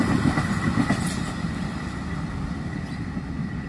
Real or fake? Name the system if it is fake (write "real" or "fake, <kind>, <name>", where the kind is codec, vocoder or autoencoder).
real